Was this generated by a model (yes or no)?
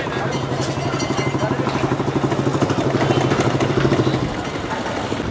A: no